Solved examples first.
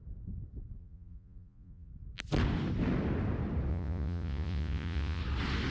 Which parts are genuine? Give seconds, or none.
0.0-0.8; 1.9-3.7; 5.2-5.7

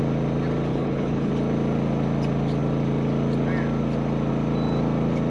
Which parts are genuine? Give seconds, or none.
0.0-0.7; 1.3-5.3

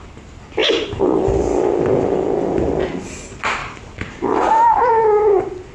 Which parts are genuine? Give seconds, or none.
0.0-0.6; 1.4-3.6; 4.9-5.7

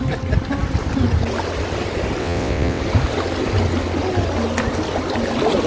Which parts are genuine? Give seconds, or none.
0.0-2.2; 2.8-5.7